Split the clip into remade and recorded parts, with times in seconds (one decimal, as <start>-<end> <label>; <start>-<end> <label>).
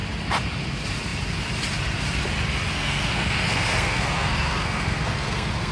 0.0-2.7 recorded; 2.7-5.7 remade